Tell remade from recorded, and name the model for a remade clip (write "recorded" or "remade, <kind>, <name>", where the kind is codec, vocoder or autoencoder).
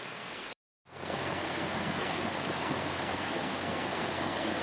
remade, codec, SNAC